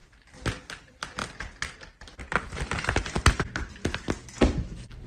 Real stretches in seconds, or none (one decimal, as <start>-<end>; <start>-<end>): 0.0-0.7; 1.2-3.7